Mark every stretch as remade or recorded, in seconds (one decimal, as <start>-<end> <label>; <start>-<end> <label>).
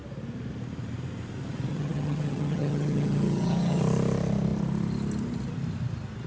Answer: 0.0-1.7 recorded; 1.7-3.8 remade; 3.8-6.3 recorded